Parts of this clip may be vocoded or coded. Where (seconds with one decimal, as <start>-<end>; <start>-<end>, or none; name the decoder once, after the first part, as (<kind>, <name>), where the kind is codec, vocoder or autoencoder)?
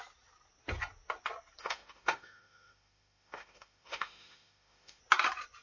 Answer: 1.6-5.0 (autoencoder, DAC-VAE)